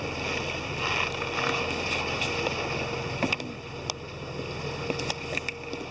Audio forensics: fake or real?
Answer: real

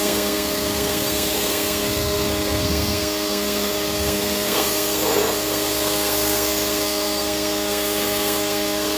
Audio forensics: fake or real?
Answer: fake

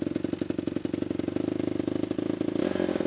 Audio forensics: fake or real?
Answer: real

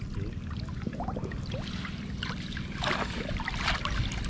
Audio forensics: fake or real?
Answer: real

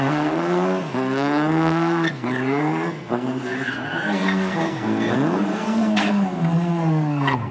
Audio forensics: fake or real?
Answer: fake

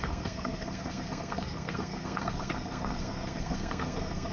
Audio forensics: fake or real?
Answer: fake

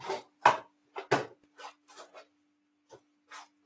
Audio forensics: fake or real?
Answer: real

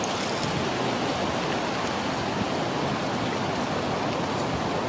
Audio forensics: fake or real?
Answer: real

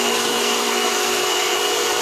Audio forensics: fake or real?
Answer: fake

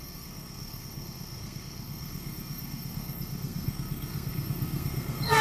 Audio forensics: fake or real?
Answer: fake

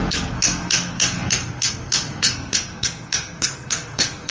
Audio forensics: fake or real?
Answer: fake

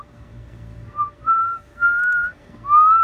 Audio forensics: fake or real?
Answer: fake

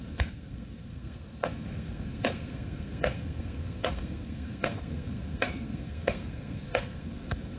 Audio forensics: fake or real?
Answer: fake